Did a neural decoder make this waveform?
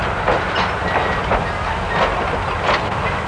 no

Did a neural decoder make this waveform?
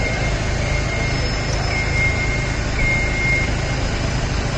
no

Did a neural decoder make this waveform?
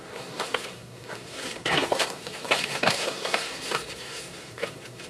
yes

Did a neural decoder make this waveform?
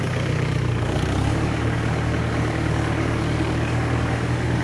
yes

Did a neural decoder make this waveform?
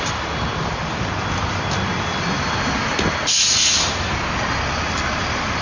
no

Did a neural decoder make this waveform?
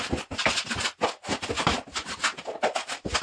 no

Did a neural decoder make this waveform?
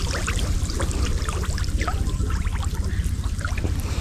no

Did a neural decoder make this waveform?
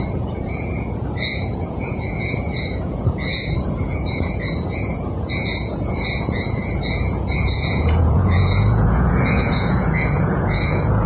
yes